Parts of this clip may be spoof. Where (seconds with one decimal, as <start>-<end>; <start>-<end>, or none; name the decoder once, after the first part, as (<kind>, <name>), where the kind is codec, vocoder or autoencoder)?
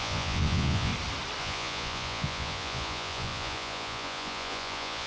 0.0-0.9 (vocoder, Vocos); 1.4-5.1